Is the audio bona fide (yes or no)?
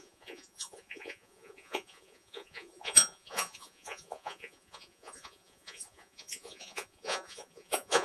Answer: no